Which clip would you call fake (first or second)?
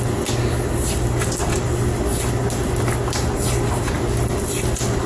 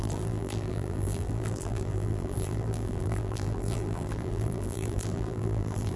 second